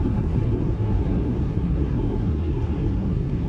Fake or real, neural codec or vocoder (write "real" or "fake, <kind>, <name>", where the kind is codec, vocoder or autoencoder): fake, codec, SNAC